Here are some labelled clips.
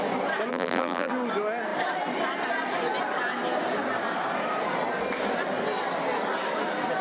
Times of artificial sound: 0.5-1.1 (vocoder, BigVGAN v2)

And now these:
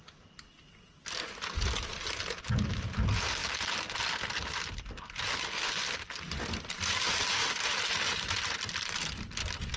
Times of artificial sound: none

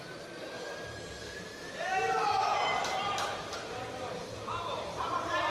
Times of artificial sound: 0.0-1.2 (vocoder, BigVGAN v2); 1.8-5.5

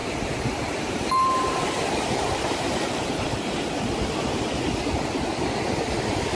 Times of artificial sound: 0.0-3.8 (vocoder, BigVGAN v2)